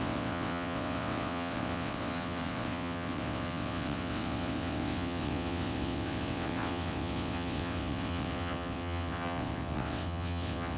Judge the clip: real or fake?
fake